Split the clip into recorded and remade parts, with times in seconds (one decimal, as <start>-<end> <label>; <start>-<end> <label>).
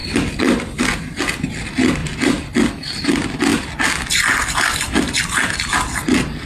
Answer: 0.0-0.8 remade; 0.8-2.0 recorded; 2.0-2.5 remade; 2.5-3.5 recorded; 3.5-4.5 remade; 4.5-6.5 recorded